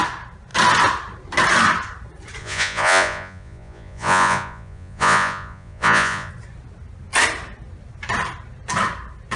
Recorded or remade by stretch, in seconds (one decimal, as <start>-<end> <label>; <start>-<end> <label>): 0.0-2.4 recorded; 2.4-6.3 remade; 6.3-9.4 recorded